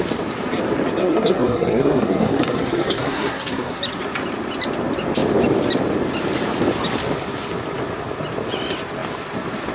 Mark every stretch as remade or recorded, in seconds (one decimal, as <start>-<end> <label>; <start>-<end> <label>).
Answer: 0.0-1.0 recorded; 1.0-3.8 remade; 3.8-9.7 recorded